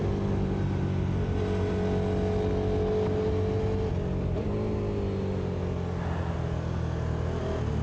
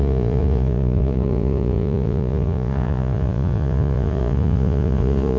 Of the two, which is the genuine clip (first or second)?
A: first